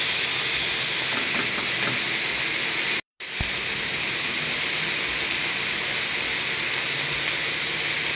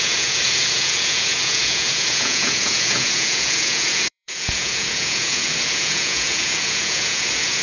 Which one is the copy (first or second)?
second